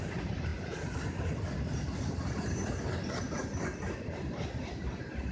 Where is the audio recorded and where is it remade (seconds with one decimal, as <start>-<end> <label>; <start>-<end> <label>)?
0.0-0.5 remade; 0.5-3.2 recorded; 3.2-5.3 remade